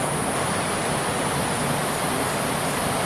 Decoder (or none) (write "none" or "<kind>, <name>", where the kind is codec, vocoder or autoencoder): none